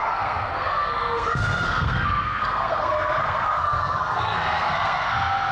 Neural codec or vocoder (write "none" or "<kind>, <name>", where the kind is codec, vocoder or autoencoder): codec, SNAC